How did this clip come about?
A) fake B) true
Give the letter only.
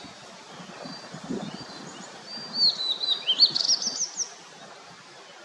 B